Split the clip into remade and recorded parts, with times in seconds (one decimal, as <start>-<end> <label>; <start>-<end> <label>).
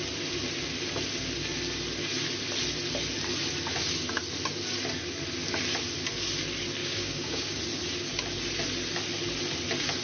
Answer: 0.0-6.8 recorded; 6.8-7.6 remade; 7.6-10.0 recorded